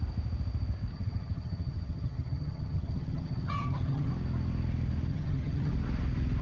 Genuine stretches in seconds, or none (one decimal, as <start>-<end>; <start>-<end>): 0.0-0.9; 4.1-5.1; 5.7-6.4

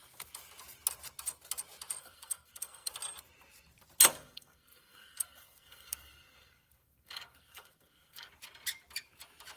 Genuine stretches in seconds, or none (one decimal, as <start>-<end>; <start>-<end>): 0.0-2.0; 2.9-4.2; 8.3-9.6

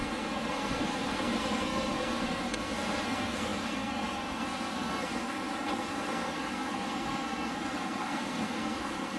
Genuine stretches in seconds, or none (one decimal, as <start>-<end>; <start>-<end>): none

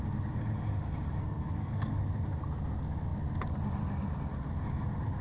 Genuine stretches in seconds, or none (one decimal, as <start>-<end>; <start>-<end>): 0.0-1.2; 2.0-5.2